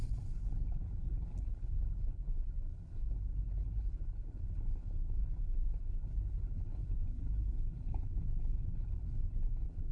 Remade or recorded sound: remade